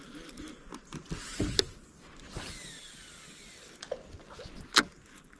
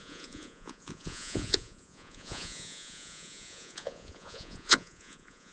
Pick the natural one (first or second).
first